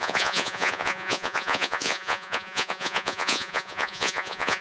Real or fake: fake